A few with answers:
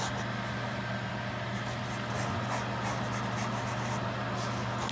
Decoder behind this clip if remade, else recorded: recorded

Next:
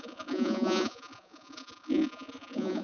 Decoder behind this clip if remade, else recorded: remade, vocoder, Vocos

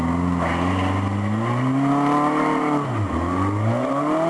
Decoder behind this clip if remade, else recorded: recorded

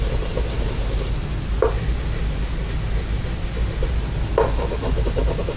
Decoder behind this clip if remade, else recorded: recorded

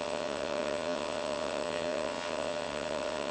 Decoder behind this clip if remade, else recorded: remade, vocoder, WaveNeXt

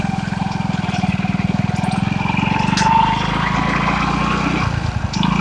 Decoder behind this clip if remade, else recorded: recorded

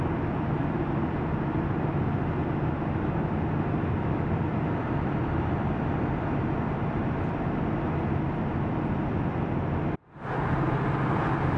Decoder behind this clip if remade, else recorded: recorded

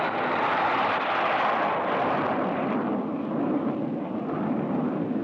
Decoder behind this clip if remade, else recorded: recorded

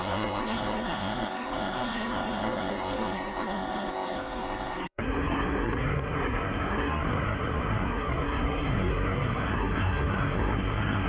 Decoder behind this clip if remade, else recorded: remade, codec, SNAC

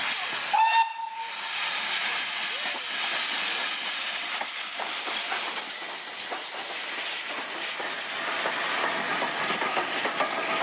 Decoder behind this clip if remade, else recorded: recorded